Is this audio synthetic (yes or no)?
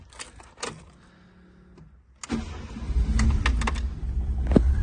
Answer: no